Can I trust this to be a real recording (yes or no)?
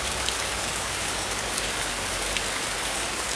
no